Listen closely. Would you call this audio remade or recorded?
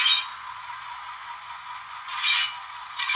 remade